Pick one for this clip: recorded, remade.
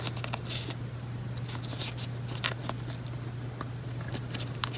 recorded